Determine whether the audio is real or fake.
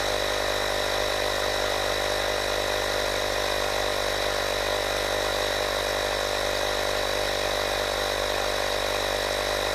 real